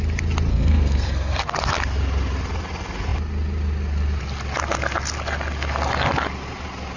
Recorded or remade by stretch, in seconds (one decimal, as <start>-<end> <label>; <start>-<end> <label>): 0.0-0.5 recorded; 0.5-1.4 remade; 1.4-7.0 recorded